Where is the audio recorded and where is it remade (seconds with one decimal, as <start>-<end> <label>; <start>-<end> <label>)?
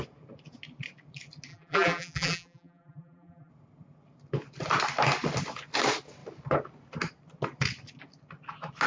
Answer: 0.0-1.5 recorded; 1.5-3.5 remade; 3.5-8.9 recorded